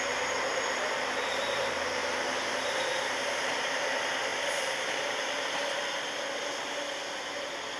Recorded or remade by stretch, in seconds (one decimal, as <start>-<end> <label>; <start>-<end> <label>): 0.0-0.5 remade; 0.5-1.4 recorded; 1.4-2.0 remade; 2.0-2.5 recorded; 2.5-4.3 remade; 4.3-7.8 recorded